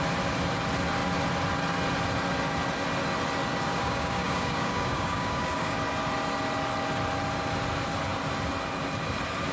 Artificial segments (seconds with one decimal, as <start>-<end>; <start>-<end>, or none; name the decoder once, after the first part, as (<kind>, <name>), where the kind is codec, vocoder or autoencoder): 3.7-5.8 (codec, DAC)